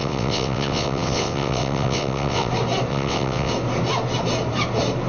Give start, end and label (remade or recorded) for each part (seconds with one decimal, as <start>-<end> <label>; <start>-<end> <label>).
0.0-2.5 remade; 2.5-2.9 recorded; 2.9-3.5 remade; 3.5-5.1 recorded